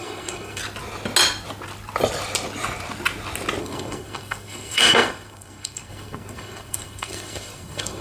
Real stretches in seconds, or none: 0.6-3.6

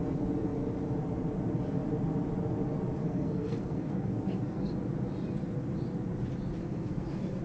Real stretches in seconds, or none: 0.0-3.0; 4.7-6.6

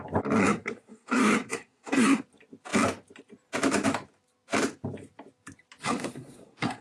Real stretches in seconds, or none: 0.0-0.4; 2.2-5.8

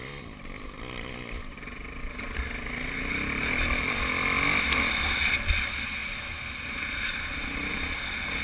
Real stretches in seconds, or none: 0.0-8.4

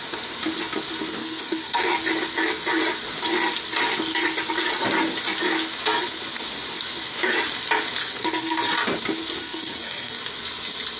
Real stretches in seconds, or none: 0.0-1.2; 1.9-8.0; 8.7-9.4; 10.2-11.0

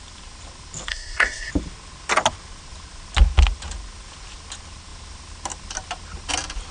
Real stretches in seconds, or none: 0.0-0.9; 1.5-6.7